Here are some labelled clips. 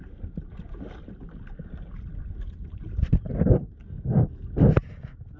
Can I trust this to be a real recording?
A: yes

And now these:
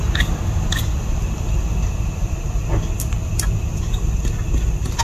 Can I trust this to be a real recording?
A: yes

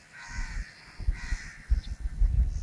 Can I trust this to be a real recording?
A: yes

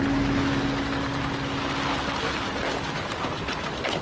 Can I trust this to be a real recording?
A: yes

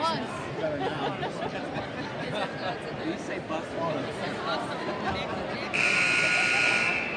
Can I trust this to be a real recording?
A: yes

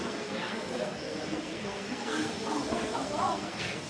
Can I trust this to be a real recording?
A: no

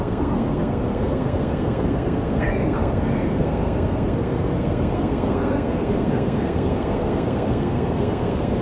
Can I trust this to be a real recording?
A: no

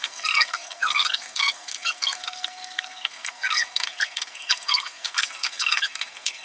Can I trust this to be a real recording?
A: no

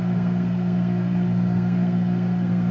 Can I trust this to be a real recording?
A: no